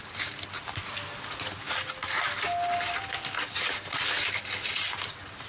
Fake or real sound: real